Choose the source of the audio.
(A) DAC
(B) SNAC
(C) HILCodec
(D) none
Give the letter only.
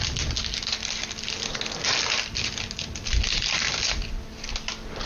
D